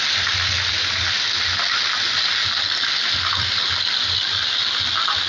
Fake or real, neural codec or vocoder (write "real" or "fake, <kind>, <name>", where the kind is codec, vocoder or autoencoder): real